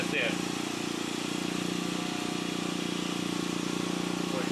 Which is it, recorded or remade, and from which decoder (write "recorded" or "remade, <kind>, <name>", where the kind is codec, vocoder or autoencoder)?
recorded